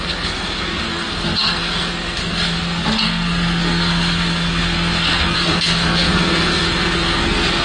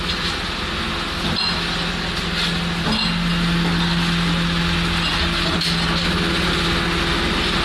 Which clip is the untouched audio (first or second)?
second